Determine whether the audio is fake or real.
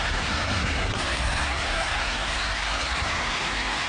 fake